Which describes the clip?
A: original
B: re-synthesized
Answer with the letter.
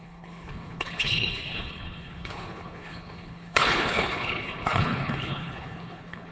B